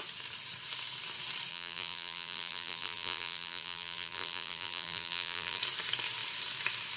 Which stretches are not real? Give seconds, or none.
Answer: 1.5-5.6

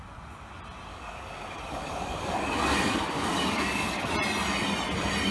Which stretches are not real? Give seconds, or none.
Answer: 0.9-4.1

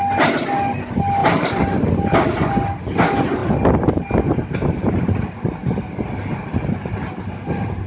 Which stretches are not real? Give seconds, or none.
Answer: 1.2-1.9

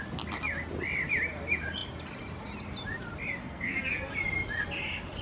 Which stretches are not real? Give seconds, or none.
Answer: 3.4-4.1

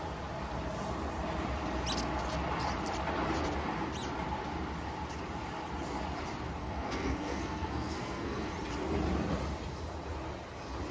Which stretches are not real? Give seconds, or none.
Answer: 6.6-8.5

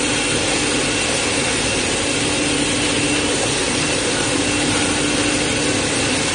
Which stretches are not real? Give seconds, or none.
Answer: 3.6-4.4

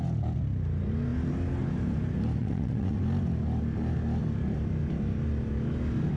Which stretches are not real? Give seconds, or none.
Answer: 2.4-3.0

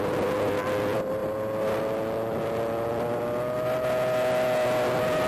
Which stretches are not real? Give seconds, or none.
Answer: none